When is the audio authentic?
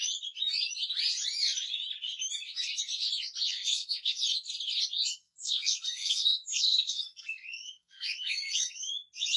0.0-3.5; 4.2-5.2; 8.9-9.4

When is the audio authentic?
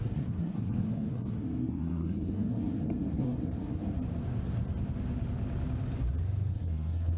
3.8-6.5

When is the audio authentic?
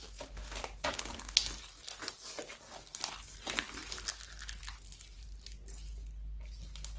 0.0-7.0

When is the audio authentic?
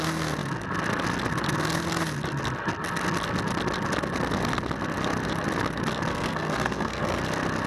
0.0-6.1; 7.2-7.7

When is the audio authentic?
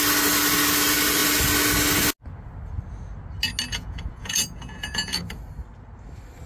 0.0-3.7; 5.4-6.5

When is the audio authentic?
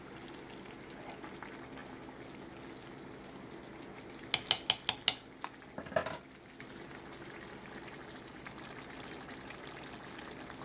0.0-10.6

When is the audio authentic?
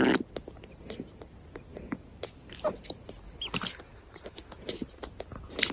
0.0-5.7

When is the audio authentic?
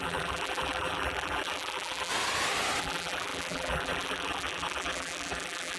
2.1-2.8